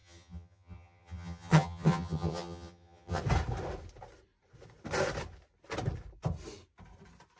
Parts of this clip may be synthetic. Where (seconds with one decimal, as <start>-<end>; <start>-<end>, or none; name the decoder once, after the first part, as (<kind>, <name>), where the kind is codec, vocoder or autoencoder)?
0.0-3.2 (vocoder, HiFi-GAN)